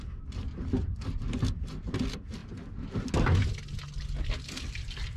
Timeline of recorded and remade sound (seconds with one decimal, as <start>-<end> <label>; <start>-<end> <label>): 0.0-5.2 recorded